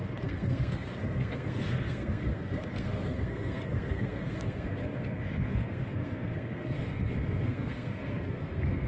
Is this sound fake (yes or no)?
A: yes